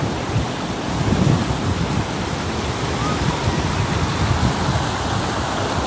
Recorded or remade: recorded